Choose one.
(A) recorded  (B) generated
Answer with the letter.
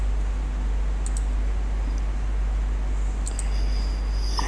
A